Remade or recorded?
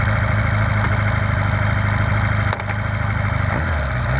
recorded